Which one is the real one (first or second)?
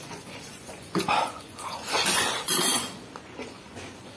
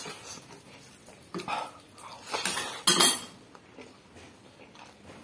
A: second